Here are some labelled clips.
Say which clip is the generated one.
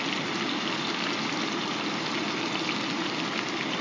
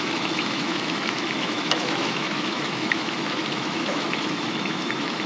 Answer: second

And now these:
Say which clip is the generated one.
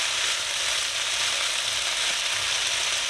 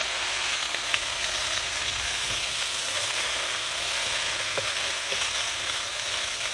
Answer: second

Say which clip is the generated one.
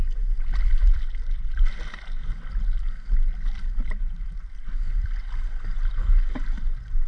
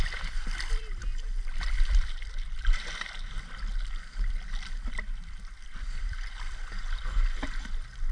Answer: second